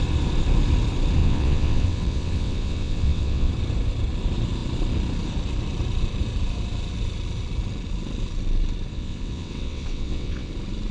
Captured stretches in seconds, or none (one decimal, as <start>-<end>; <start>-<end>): 0.0-1.2; 3.5-8.9; 10.5-10.9